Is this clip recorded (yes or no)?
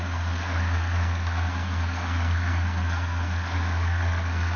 no